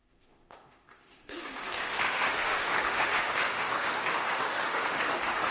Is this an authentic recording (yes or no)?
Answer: no